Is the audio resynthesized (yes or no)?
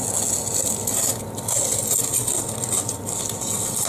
no